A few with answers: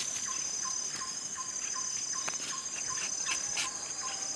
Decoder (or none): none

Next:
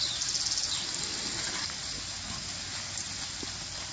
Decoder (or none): none